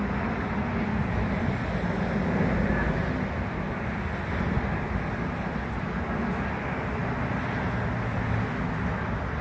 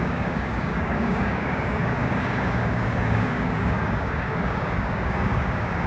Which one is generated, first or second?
second